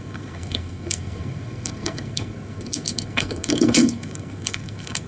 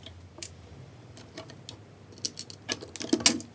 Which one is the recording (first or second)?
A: second